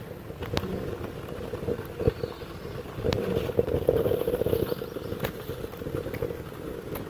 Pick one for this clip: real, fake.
real